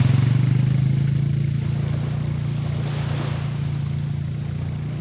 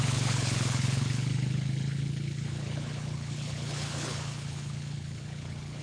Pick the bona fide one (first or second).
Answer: first